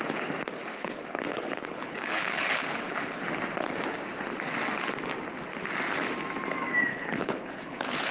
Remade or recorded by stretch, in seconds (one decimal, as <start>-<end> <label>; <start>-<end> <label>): 0.0-0.7 recorded; 0.7-3.2 remade; 3.2-6.9 recorded; 6.9-8.1 remade